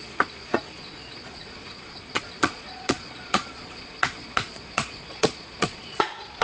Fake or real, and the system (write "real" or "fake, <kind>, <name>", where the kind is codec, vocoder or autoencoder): fake, vocoder, Vocos